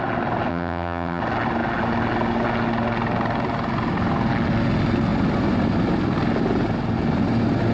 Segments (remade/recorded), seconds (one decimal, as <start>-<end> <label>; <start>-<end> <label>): 0.0-0.5 recorded; 0.5-1.2 remade; 1.2-7.7 recorded